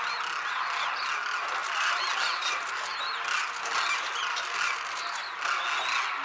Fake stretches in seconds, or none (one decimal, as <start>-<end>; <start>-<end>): none